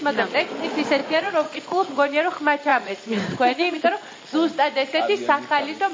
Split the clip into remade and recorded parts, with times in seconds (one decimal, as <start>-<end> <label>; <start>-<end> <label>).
0.0-1.0 recorded; 1.0-1.9 remade; 1.9-2.7 recorded; 2.7-3.7 remade; 3.7-5.9 recorded